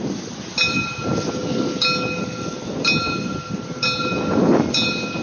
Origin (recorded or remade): recorded